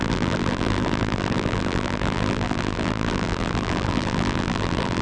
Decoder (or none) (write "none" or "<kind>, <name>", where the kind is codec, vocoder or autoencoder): vocoder, BigVGAN v2